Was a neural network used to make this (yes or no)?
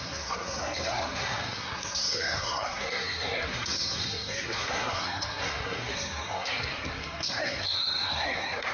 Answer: yes